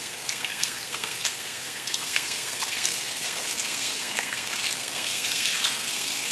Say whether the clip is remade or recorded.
remade